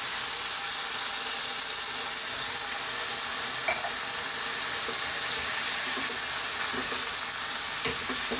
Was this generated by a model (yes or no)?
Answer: no